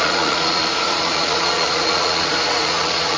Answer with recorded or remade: remade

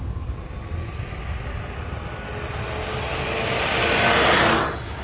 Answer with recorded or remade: recorded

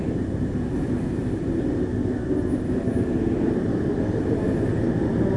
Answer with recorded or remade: recorded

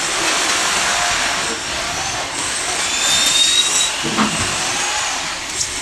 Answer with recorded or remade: recorded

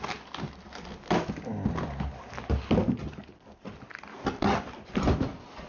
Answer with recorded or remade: recorded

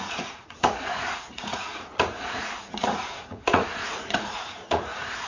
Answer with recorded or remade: remade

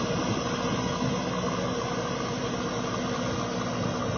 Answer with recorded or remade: recorded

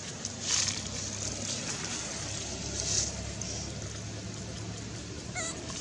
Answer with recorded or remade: recorded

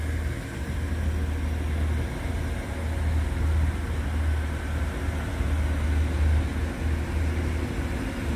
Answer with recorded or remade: recorded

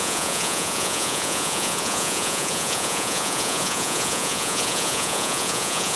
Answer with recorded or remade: remade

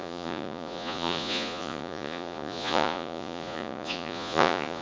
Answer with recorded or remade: remade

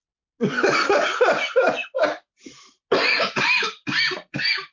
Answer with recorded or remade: recorded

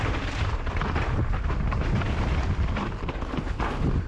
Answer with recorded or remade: recorded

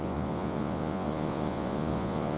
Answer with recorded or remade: remade